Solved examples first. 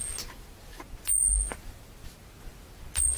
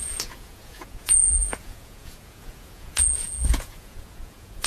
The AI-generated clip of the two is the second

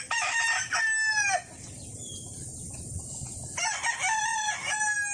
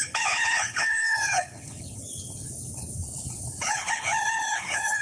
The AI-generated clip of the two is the second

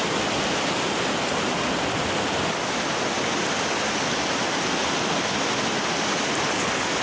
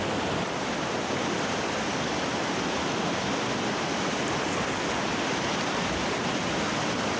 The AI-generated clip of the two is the second